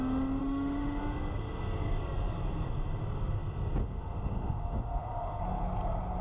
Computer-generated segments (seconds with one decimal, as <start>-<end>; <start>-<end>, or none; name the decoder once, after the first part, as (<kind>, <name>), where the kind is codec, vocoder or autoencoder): 0.4-1.0 (autoencoder, DAC-VAE); 3.8-5.4